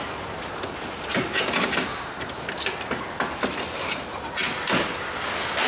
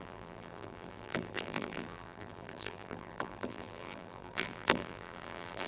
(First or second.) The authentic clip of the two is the first